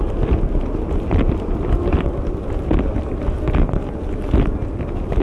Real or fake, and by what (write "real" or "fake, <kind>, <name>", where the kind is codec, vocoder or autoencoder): real